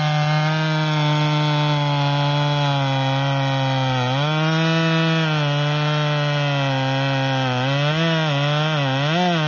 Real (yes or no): yes